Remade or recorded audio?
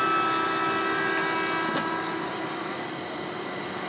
recorded